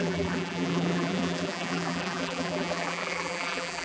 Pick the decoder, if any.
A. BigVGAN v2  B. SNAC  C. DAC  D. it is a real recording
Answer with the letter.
A